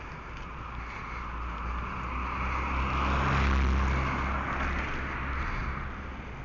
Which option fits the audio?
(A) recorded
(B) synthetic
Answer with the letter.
A